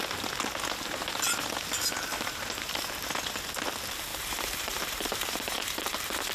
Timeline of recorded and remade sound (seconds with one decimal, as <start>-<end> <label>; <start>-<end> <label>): 0.0-2.1 recorded; 2.1-3.1 remade; 3.1-4.1 recorded; 4.1-6.3 remade